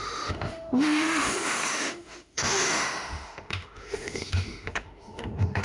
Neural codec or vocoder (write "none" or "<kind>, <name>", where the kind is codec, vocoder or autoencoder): autoencoder, DAC-VAE